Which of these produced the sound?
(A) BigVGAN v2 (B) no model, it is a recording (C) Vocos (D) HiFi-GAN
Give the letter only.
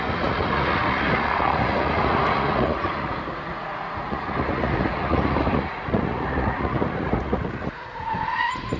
C